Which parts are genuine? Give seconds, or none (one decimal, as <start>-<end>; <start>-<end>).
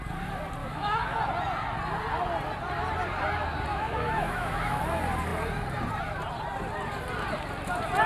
0.0-0.6; 1.2-3.7; 4.8-8.1